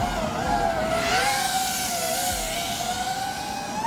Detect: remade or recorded recorded